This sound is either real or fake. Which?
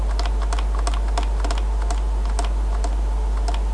real